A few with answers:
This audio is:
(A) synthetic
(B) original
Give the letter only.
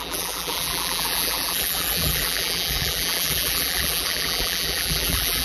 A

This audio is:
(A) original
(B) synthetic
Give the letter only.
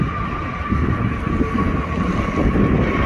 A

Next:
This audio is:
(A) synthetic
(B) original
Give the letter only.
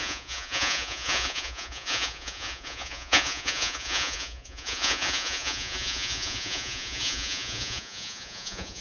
A